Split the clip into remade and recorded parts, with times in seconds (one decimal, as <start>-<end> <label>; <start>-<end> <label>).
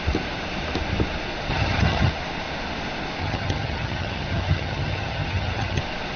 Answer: 0.0-1.5 recorded; 1.5-2.1 remade; 2.1-3.2 recorded; 3.2-5.8 remade; 5.8-6.2 recorded